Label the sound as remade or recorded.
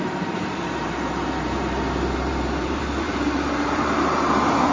remade